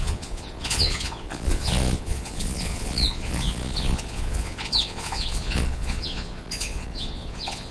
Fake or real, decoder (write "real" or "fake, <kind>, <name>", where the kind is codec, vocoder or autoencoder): fake, vocoder, Vocos